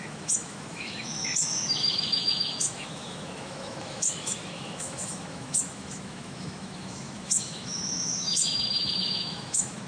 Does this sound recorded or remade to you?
remade